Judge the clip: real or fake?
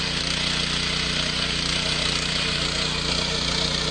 real